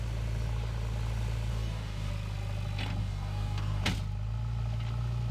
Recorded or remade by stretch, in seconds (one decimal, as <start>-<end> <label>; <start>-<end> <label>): 0.0-1.5 recorded; 1.5-2.1 remade; 2.1-3.0 recorded; 3.0-3.8 remade; 3.8-5.3 recorded

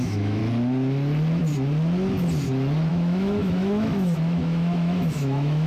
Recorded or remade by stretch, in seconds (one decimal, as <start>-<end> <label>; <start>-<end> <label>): 0.0-0.4 remade; 0.4-2.9 recorded; 2.9-5.7 remade